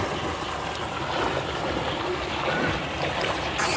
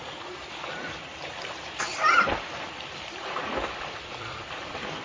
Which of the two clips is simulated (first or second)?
second